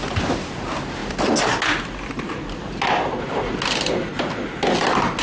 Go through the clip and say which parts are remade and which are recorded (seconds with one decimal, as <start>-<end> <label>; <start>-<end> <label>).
0.0-5.2 recorded